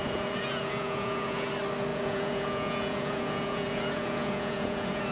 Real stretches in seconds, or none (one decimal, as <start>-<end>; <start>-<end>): 1.5-1.9